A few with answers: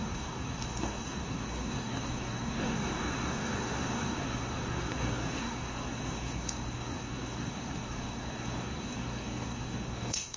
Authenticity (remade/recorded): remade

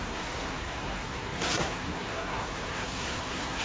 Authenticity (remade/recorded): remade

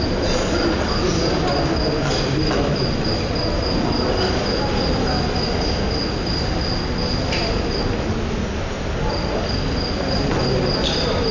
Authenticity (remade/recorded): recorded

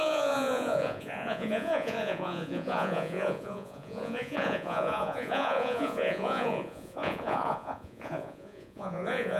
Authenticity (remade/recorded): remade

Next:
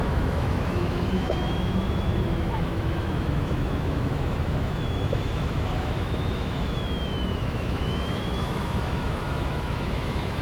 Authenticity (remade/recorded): remade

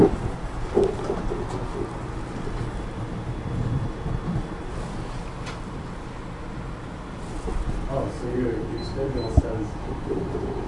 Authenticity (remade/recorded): recorded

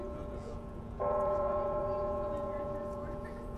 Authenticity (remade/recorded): remade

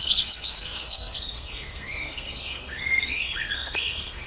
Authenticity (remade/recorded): remade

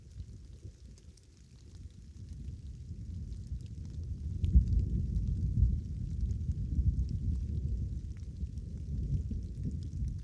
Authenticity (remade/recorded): recorded